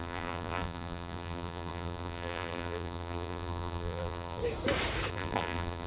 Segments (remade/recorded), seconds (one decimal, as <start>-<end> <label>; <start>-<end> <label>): 0.0-4.4 remade; 4.4-5.1 recorded; 5.1-5.9 remade